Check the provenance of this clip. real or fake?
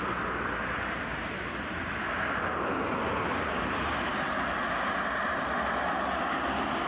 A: real